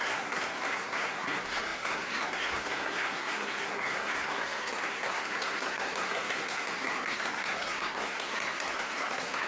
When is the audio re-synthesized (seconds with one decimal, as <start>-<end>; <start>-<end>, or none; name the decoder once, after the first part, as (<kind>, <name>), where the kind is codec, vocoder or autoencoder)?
0.0-9.5 (codec, SNAC)